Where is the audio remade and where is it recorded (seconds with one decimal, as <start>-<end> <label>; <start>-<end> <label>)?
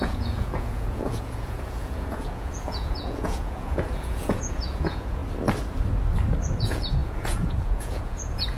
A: 0.0-5.2 remade; 5.2-6.6 recorded; 6.6-8.6 remade